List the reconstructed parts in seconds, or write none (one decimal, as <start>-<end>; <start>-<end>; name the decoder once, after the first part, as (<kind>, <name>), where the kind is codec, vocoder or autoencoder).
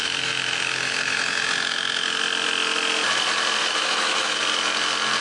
0.0-2.2 (autoencoder, DAC-VAE); 3.6-4.4